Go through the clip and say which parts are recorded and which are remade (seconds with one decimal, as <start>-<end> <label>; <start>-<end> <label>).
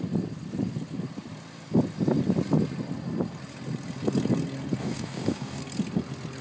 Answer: 0.0-4.8 recorded; 4.8-5.6 remade; 5.6-6.4 recorded